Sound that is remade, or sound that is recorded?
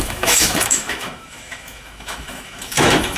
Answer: remade